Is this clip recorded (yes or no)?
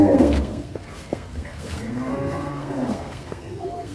no